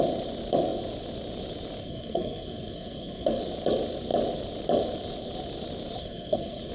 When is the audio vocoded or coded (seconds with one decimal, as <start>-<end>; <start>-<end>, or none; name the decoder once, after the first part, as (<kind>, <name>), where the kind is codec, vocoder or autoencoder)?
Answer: 1.8-3.4 (codec, SNAC); 6.0-6.7